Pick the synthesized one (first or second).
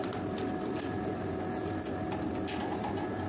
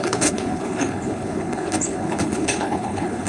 second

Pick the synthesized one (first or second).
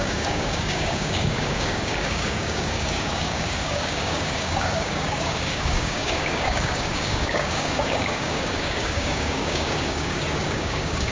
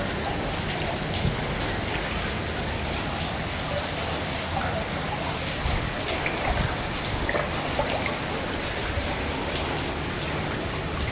first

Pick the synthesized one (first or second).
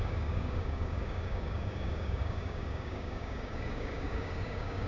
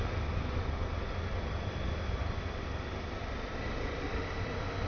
first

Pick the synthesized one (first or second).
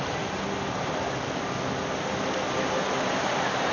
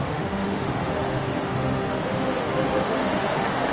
second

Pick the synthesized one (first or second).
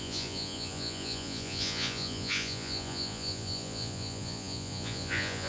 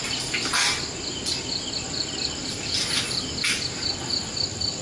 first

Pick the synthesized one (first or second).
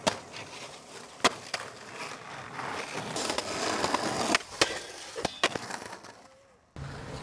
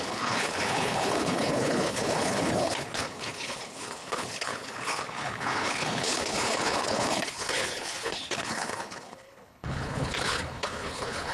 second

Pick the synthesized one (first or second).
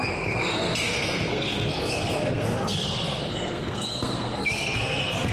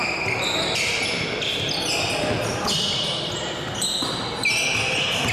first